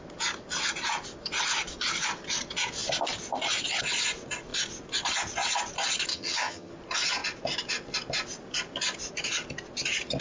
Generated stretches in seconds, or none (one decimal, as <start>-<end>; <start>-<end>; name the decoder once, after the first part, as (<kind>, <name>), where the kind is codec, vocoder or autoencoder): 6.1-6.7 (vocoder, HiFi-GAN)